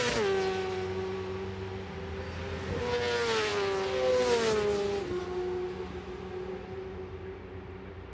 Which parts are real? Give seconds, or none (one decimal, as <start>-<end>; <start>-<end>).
0.0-8.1